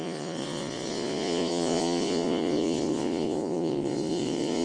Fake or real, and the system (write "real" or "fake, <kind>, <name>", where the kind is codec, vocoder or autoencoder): fake, vocoder, Vocos